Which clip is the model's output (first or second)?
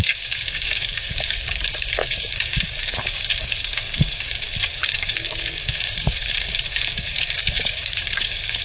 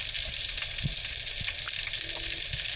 first